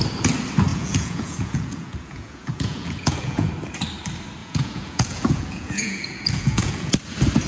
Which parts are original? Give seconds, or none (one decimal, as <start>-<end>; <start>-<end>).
0.0-0.7; 3.5-4.4; 6.9-7.5